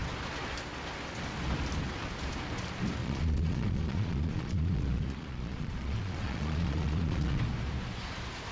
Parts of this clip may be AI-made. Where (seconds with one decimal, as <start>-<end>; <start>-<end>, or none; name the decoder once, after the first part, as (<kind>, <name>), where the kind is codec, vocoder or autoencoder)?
3.0-7.4 (vocoder, Vocos)